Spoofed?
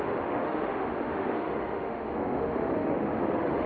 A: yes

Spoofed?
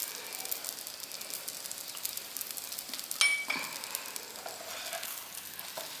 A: no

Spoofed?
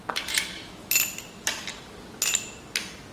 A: no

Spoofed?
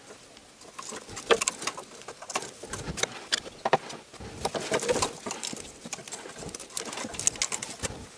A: no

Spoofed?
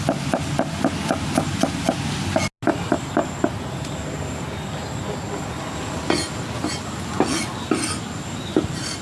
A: no